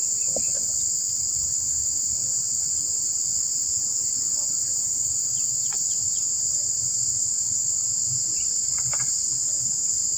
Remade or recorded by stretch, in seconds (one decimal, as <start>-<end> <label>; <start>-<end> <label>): 0.0-2.2 remade; 2.2-4.3 recorded; 4.3-10.2 remade